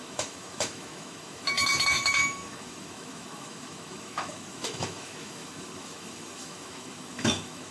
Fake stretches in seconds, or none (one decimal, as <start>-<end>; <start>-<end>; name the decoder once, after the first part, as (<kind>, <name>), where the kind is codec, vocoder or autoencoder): 0.0-7.7 (autoencoder, DAC-VAE)